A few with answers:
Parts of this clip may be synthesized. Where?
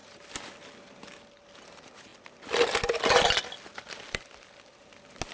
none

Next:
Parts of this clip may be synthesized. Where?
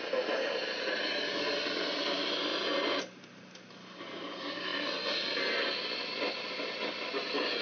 none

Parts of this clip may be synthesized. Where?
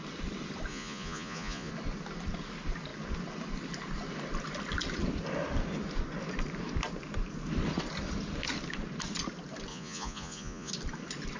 0.7-1.7 (vocoder, Vocos); 9.7-10.7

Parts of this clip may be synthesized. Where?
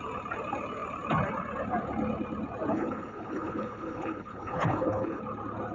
2.7-5.2 (codec, HILCodec)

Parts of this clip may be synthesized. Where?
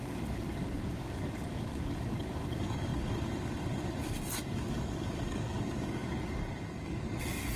0.0-7.6 (codec, DAC)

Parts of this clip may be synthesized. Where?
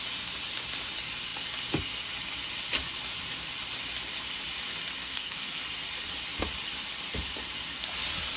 5.0-5.6 (codec, SNAC)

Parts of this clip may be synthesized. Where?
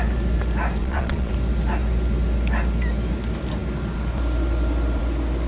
0.8-1.3 (vocoder, Vocos)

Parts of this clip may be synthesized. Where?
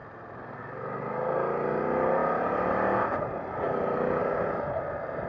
0.0-0.6 (vocoder, BigVGAN v2)